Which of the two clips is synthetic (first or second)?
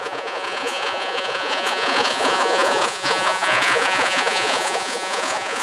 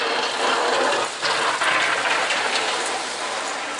first